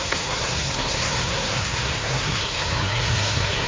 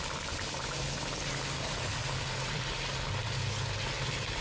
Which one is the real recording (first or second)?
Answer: second